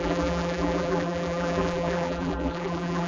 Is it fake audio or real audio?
fake